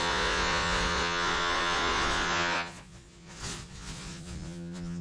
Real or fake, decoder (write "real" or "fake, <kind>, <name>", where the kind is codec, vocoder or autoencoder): fake, vocoder, Vocos